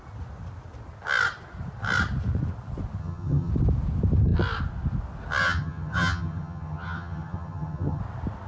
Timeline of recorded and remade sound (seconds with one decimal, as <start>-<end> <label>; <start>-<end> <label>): 0.0-3.0 recorded; 3.0-3.5 remade; 3.5-5.4 recorded; 5.4-8.0 remade; 8.0-8.5 recorded